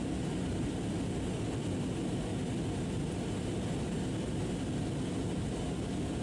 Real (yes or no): yes